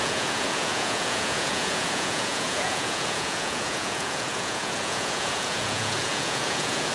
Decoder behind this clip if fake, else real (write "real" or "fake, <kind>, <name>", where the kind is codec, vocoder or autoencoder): fake, vocoder, Vocos